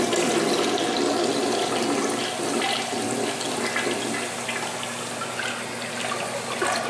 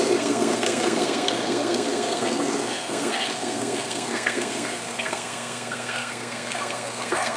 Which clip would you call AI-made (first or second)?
second